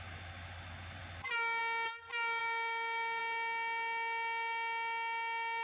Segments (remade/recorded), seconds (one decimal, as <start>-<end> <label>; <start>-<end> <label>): 0.0-2.4 recorded; 2.4-3.2 remade; 3.2-5.6 recorded